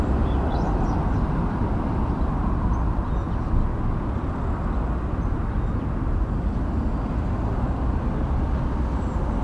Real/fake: real